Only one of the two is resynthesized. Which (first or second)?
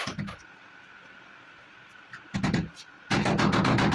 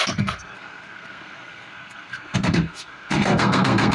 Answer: second